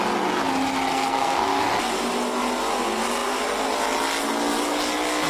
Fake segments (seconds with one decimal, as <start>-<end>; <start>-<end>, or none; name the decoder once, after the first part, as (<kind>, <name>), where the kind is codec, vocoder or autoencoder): 0.9-1.6 (codec, SNAC)